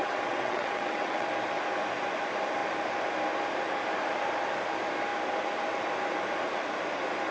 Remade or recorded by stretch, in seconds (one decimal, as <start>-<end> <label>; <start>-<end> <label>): 0.0-1.3 remade; 1.3-7.3 recorded